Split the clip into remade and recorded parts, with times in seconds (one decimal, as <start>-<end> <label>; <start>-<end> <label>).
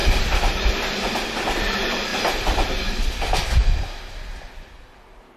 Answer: 0.0-0.7 remade; 0.7-2.1 recorded; 2.1-5.4 remade